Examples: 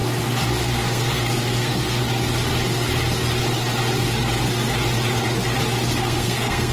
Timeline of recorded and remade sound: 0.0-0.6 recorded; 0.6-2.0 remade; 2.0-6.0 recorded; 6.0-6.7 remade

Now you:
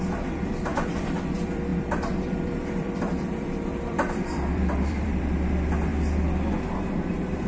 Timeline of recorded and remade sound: 0.0-5.9 remade; 5.9-7.1 recorded; 7.1-7.5 remade

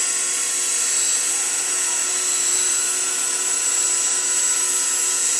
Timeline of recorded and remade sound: 0.0-5.4 recorded

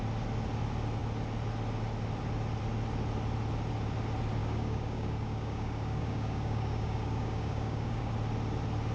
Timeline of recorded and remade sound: 0.0-4.4 recorded; 4.4-8.1 remade; 8.1-8.9 recorded

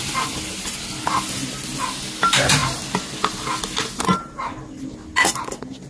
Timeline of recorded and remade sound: 0.0-5.9 recorded